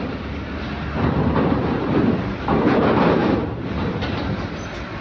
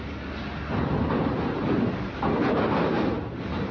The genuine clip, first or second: second